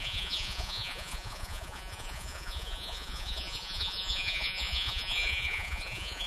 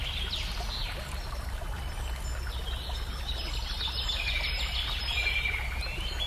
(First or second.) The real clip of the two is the second